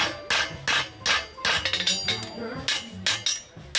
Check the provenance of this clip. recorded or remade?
recorded